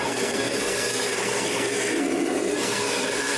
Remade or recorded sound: remade